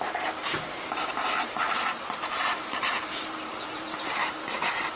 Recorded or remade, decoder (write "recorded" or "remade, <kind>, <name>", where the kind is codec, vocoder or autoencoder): remade, vocoder, BigVGAN v2